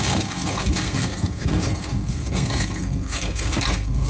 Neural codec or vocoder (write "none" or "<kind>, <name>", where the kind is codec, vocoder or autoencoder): codec, SNAC